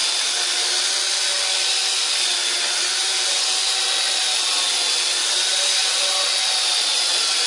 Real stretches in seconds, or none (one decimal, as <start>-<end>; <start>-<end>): 0.0-7.5